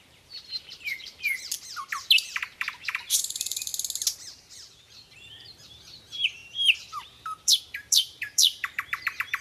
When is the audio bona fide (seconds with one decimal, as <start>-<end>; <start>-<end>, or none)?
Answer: 1.3-2.0; 3.7-4.3